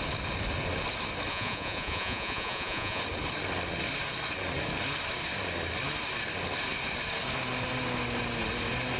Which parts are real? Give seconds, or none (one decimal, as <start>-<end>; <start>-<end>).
0.0-1.3; 3.0-9.0